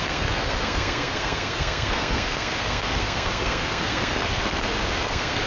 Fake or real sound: fake